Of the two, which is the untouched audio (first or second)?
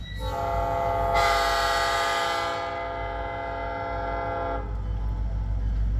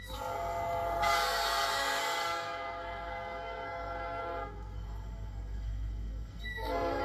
first